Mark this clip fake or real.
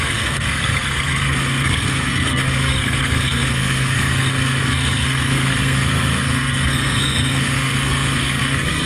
fake